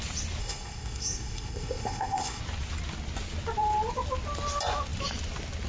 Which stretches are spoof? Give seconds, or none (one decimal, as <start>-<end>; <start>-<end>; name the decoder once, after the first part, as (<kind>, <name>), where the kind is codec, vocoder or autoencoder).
0.4-2.4 (codec, ZipCodec)